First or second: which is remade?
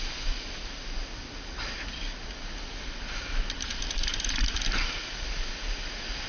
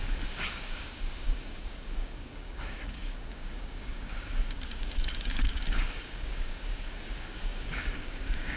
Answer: second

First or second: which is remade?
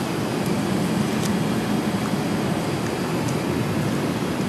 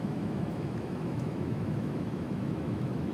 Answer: second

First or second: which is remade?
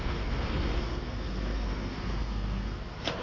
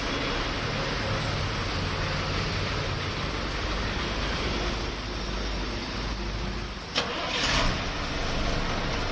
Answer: first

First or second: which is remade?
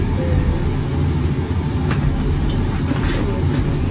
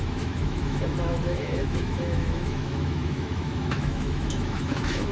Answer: second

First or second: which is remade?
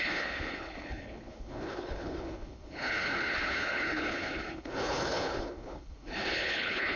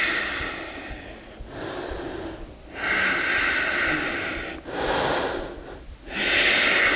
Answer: first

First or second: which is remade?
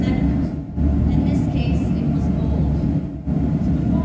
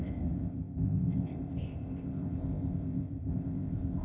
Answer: second